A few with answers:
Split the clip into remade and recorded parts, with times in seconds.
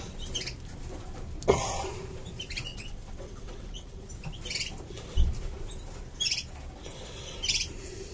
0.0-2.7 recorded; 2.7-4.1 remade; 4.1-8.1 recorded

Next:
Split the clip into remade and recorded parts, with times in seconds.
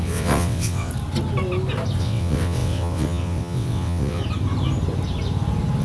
0.0-0.9 remade; 0.9-2.0 recorded; 2.0-4.2 remade; 4.2-5.8 recorded